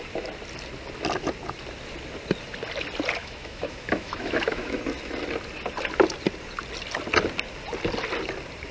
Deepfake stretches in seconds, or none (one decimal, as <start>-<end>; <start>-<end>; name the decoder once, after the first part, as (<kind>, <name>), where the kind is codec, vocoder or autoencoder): 3.2-4.8 (autoencoder, DAC-VAE)